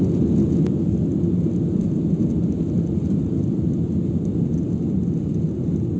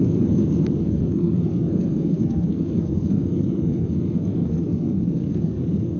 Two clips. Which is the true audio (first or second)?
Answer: first